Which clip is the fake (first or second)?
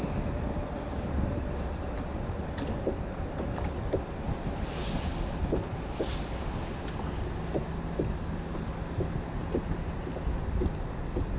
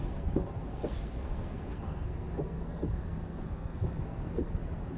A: second